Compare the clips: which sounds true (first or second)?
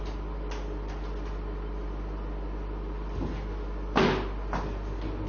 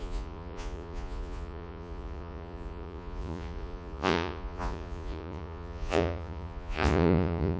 first